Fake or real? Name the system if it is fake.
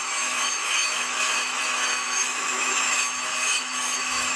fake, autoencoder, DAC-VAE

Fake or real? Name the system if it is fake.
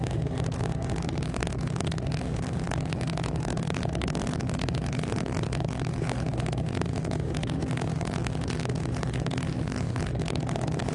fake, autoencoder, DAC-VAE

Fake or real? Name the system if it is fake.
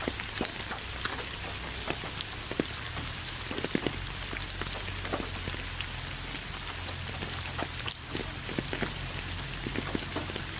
real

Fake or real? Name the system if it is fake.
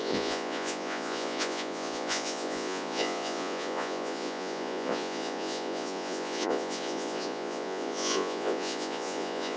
fake, vocoder, Vocos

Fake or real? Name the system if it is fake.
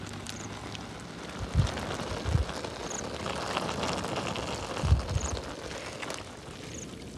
real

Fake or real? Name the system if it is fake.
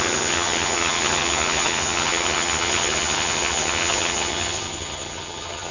fake, vocoder, HiFi-GAN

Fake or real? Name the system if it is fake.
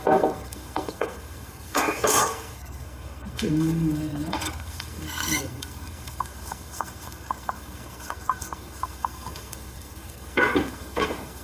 fake, codec, SNAC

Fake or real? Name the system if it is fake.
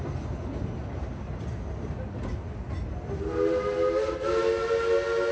real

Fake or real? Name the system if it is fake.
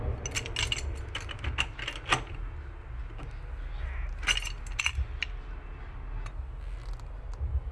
real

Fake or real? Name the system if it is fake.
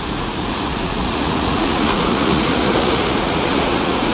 fake, vocoder, Vocos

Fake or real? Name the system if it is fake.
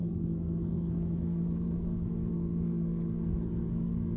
fake, codec, SNAC